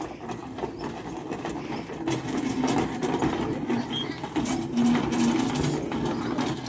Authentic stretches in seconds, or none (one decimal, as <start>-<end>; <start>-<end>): 0.0-6.7